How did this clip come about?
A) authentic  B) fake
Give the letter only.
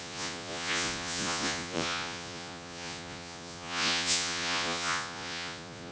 B